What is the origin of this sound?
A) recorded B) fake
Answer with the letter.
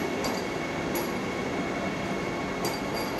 A